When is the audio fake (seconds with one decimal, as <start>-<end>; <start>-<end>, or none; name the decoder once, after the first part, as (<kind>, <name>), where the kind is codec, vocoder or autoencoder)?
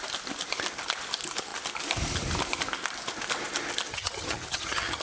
3.9-5.0 (vocoder, HiFi-GAN)